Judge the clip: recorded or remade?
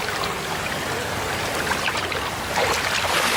remade